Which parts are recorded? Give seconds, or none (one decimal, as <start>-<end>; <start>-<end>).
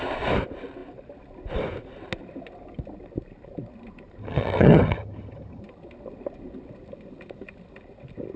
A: 0.0-4.2; 5.6-8.4